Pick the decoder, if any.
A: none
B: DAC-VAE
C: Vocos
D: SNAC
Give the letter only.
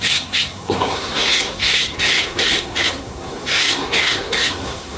D